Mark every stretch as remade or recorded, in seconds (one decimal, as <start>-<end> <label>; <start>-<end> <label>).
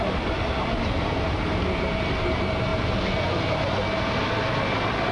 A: 0.0-5.1 recorded